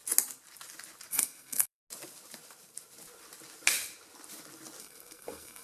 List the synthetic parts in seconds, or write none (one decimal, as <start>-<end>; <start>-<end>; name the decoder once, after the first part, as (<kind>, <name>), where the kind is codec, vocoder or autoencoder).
1.1-1.8 (codec, SNAC); 4.8-5.6